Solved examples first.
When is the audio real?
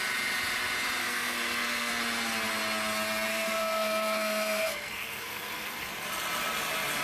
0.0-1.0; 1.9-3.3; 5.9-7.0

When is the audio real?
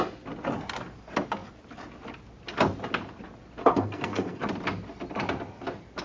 0.0-3.6; 4.4-6.0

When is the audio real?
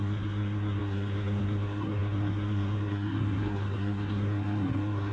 none